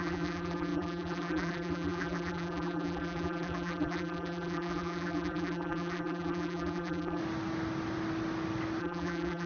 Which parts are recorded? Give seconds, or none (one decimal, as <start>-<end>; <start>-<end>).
7.2-8.8